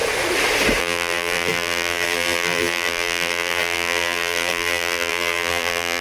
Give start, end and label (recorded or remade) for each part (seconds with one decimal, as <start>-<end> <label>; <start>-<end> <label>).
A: 0.0-0.8 recorded; 0.8-6.0 remade